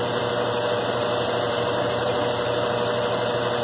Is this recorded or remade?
recorded